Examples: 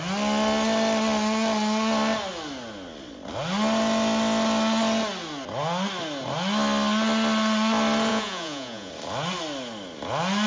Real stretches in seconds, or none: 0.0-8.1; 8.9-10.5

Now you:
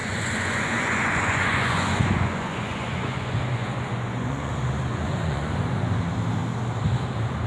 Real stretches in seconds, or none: 4.5-4.9; 6.0-7.5

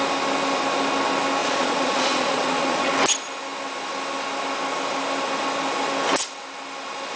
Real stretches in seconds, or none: 0.0-1.4; 2.9-7.2

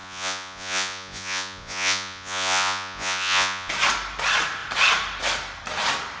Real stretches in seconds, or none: 3.7-6.2

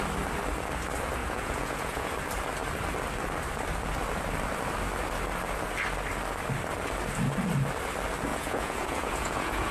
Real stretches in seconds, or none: 0.0-1.2; 2.1-8.3

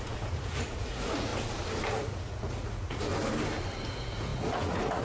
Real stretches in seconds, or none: 1.3-1.9; 3.1-3.9